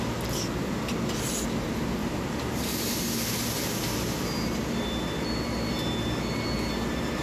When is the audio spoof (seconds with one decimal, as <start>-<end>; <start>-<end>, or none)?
2.0-2.8